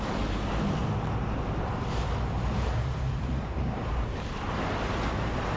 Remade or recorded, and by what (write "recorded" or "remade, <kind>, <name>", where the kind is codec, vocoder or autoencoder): remade, vocoder, BigVGAN v2